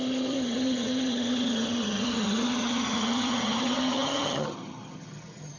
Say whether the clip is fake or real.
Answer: fake